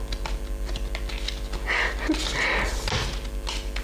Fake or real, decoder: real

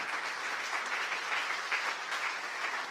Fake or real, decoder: real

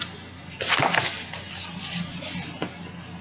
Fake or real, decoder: real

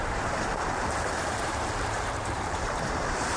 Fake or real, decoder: fake, vocoder, BigVGAN v2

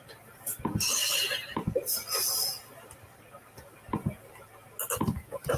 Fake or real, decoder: real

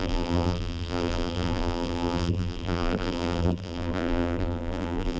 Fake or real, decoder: fake, vocoder, BigVGAN v2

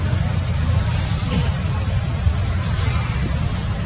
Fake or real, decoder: fake, vocoder, BigVGAN v2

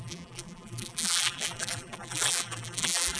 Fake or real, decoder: fake, vocoder, BigVGAN v2